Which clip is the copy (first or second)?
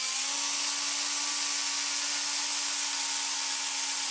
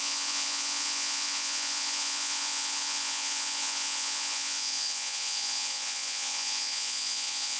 second